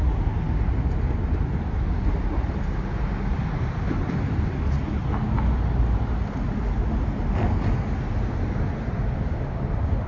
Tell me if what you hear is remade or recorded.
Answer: recorded